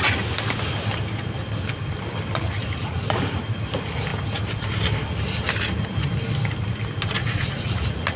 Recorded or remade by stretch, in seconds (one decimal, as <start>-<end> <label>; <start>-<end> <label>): 0.0-2.8 recorded; 2.8-3.4 remade; 3.4-7.2 recorded; 7.2-8.2 remade